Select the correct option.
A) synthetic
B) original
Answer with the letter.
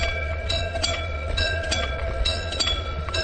A